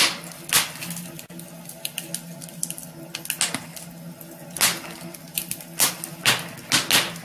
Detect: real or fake real